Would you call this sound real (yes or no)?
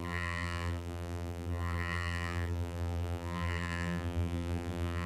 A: no